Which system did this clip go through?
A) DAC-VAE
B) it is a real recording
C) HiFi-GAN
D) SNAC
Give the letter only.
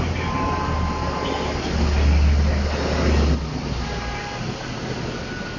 B